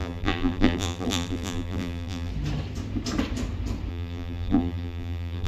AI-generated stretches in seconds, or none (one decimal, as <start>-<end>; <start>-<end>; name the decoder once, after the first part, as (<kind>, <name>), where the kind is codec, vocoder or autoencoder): 0.0-2.3 (vocoder, BigVGAN v2); 3.9-5.5